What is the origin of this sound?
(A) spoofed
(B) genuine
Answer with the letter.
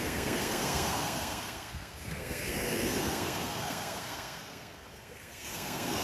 A